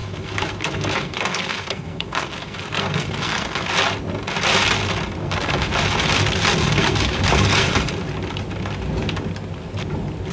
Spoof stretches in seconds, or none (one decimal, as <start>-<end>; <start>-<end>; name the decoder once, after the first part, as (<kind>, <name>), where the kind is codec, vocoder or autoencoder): 0.0-3.7 (codec, SNAC); 5.2-5.7; 6.6-7.9